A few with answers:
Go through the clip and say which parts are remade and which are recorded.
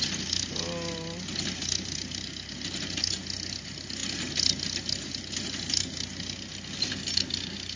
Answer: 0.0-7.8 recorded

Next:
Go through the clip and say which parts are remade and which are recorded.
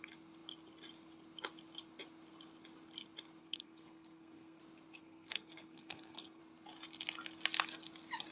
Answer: 0.0-3.4 recorded; 3.4-4.6 remade; 4.6-5.0 recorded; 5.0-6.4 remade; 6.4-8.3 recorded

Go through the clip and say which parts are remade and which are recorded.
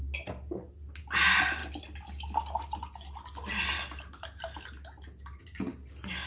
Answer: 0.0-6.3 recorded